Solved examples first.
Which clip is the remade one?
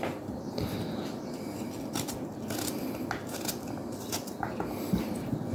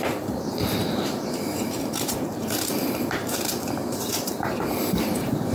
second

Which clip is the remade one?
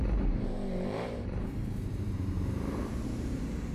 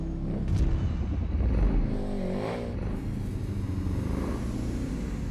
first